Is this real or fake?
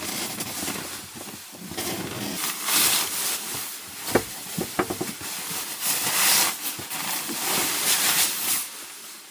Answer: fake